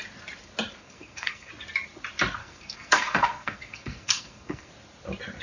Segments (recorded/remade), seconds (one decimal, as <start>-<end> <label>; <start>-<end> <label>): 0.0-0.8 recorded; 0.8-1.5 remade; 1.5-2.4 recorded; 2.4-4.7 remade; 4.7-5.4 recorded